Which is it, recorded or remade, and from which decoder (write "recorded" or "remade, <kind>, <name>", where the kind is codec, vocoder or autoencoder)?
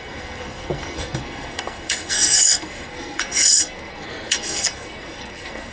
remade, codec, SNAC